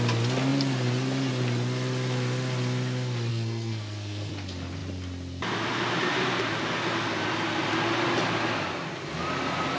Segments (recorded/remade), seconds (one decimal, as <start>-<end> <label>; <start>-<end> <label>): 0.0-3.3 recorded; 3.3-4.3 remade; 4.3-9.8 recorded